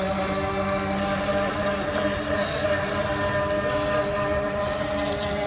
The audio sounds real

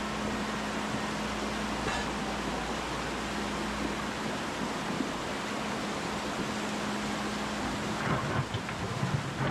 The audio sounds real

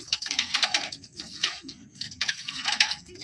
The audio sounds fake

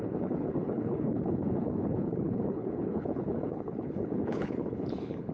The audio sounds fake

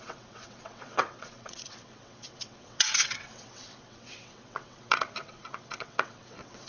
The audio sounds fake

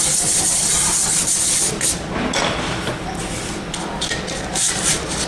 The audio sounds real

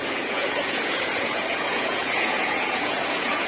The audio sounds fake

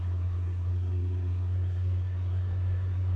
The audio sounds fake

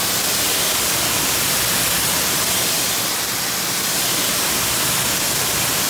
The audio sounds real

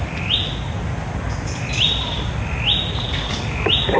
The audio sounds real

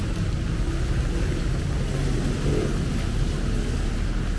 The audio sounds real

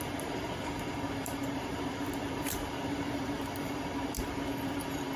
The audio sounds fake